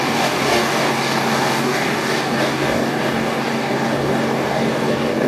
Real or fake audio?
fake